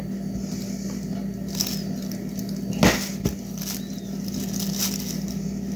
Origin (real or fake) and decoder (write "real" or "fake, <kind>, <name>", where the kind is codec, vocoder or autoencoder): real